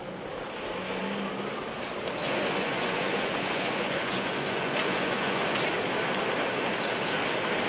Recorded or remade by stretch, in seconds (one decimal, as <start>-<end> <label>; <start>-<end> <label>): 0.0-2.2 recorded; 2.2-5.6 remade; 5.6-7.7 recorded